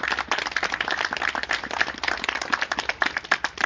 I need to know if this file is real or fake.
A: real